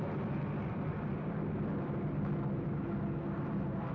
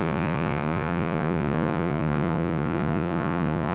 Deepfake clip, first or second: second